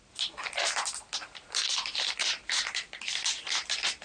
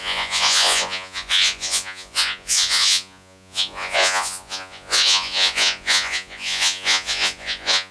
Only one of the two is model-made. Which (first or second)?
second